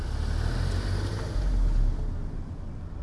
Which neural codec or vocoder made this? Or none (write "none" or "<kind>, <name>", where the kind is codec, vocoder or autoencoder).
none